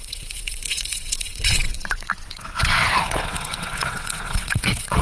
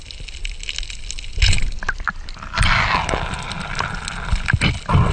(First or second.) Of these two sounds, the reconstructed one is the first